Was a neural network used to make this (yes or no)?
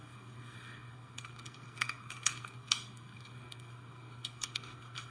yes